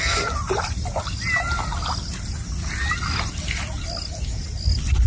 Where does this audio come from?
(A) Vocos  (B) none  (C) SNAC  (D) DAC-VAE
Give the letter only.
B